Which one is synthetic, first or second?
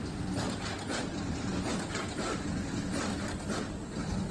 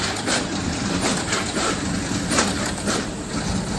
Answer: second